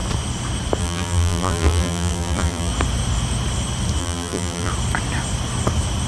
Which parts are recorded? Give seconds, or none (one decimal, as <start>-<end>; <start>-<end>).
0.0-0.8; 2.7-4.0; 4.7-6.1